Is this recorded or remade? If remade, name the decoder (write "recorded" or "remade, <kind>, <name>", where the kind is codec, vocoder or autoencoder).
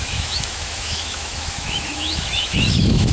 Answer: remade, autoencoder, DAC-VAE